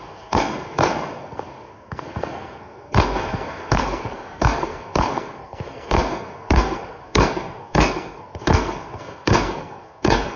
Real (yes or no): no